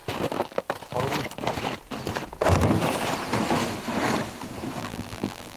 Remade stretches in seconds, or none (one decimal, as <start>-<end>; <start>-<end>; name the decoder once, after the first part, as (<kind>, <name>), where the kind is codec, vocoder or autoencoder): 4.8-5.6 (vocoder, BigVGAN v2)